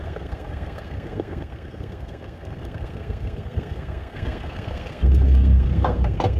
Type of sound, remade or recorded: remade